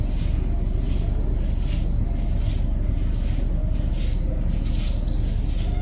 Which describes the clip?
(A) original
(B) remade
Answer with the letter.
A